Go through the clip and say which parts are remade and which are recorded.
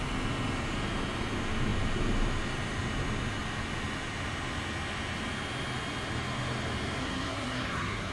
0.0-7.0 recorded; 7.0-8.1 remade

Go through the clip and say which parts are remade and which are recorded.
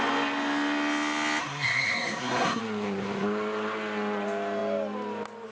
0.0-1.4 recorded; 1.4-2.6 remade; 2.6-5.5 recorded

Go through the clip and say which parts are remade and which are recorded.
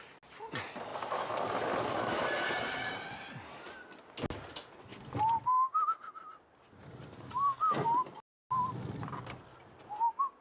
0.0-10.4 recorded